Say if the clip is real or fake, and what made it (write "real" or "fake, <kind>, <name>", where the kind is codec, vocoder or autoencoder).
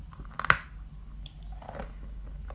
real